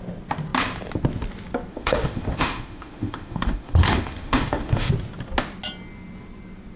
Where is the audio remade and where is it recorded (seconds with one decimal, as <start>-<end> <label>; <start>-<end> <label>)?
0.0-1.7 recorded; 1.7-4.9 remade; 4.9-6.8 recorded